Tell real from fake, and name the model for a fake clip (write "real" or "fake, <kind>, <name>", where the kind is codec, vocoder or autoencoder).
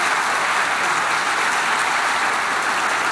real